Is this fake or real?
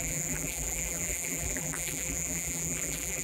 fake